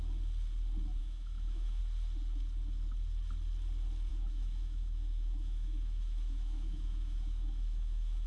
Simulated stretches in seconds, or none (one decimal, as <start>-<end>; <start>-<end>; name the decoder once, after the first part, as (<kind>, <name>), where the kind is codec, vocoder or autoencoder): 1.0-1.8 (autoencoder, DAC-VAE); 4.1-8.3